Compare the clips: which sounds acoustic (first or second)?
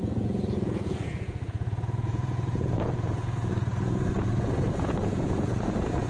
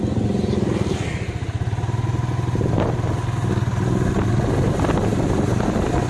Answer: second